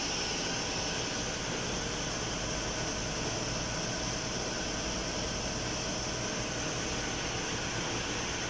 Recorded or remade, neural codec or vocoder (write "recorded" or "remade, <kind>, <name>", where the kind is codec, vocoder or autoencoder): recorded